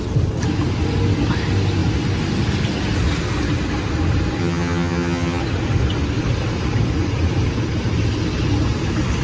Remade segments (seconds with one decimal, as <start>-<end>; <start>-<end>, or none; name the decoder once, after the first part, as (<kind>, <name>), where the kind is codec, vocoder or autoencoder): 4.4-5.4 (vocoder, HiFi-GAN)